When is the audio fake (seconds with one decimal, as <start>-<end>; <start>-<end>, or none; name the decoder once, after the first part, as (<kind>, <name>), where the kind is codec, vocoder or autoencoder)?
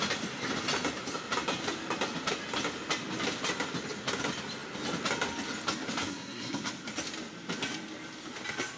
6.0-6.7 (codec, SNAC)